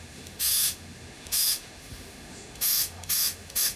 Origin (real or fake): fake